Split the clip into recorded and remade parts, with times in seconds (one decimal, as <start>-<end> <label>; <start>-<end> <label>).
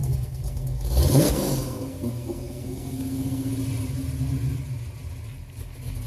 0.0-3.5 remade; 3.5-6.1 recorded